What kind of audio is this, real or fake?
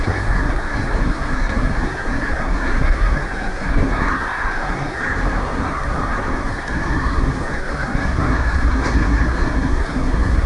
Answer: fake